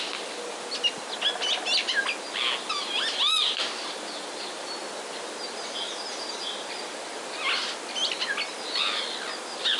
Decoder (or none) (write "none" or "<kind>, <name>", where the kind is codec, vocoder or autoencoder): none